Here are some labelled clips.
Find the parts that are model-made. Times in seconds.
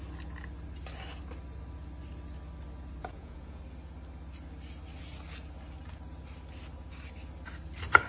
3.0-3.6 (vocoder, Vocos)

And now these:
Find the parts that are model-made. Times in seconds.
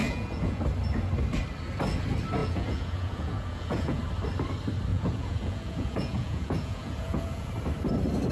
0.0-0.6 (vocoder, Vocos); 2.4-4.0; 4.9-7.5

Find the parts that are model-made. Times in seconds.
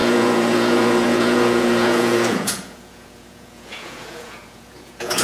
0.0-5.2 (vocoder, Vocos)